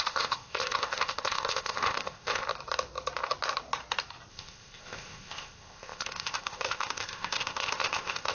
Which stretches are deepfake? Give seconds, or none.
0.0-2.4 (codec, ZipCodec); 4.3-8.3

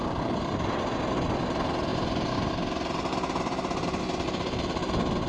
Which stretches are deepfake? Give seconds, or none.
none

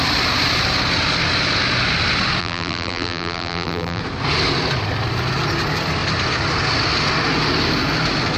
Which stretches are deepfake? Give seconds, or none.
2.4-4.0 (vocoder, BigVGAN v2)